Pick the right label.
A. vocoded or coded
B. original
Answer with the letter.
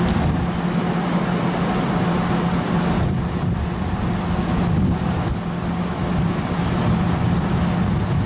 B